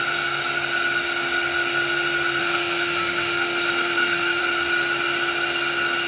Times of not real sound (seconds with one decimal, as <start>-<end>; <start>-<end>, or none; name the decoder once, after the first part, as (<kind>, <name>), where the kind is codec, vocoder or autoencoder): 2.4-4.4 (autoencoder, DAC-VAE)